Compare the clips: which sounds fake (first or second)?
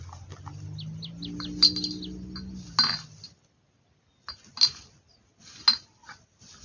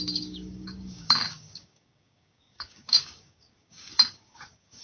second